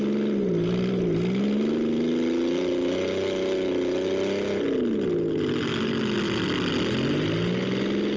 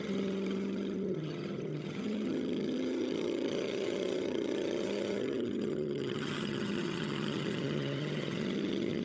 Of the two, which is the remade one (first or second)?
second